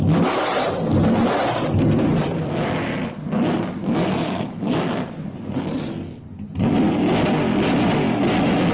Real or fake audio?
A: real